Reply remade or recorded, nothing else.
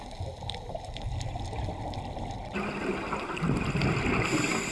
recorded